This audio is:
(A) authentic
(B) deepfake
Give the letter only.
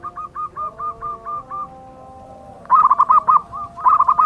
A